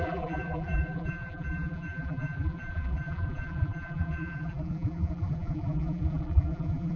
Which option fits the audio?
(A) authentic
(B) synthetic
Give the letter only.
B